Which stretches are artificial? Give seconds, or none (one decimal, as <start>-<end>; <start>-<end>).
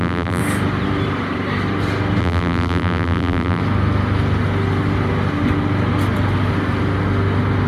0.0-0.4; 2.2-3.6